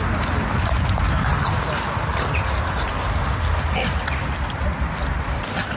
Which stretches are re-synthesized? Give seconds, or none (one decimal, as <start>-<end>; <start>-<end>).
none